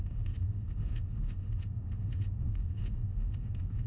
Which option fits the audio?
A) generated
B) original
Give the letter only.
A